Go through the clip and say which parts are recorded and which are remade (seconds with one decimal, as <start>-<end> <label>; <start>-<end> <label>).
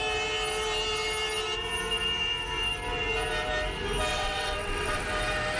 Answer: 0.0-4.1 recorded; 4.1-5.0 remade; 5.0-5.6 recorded